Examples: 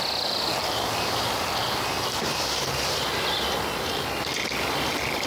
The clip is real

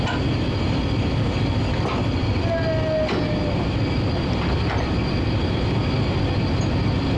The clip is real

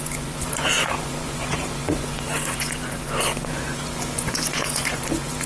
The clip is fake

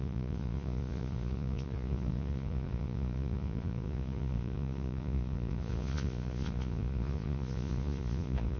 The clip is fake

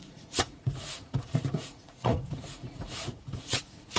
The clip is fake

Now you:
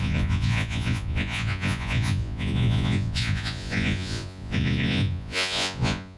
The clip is fake